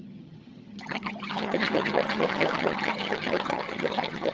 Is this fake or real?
fake